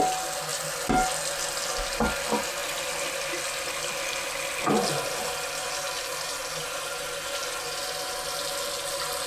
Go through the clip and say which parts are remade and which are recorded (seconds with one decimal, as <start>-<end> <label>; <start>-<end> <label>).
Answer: 0.0-9.3 recorded